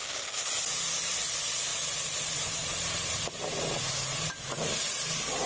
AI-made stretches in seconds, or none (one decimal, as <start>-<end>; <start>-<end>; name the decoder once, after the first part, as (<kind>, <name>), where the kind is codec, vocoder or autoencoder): 0.0-0.5 (codec, DAC)